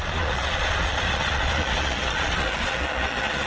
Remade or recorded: remade